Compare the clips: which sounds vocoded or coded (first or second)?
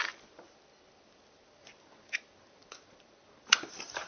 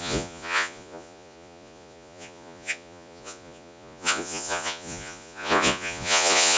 second